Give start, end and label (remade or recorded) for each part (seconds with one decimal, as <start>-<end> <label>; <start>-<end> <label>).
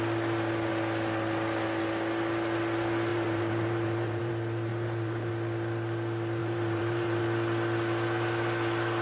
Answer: 0.0-3.1 recorded; 3.1-4.3 remade; 4.3-4.7 recorded; 4.7-5.3 remade; 5.3-6.4 recorded; 6.4-7.2 remade; 7.2-9.0 recorded